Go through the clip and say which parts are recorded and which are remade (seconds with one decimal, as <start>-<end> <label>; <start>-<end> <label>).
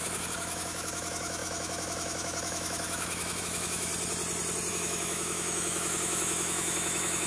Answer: 0.0-3.9 remade; 3.9-4.7 recorded; 4.7-7.3 remade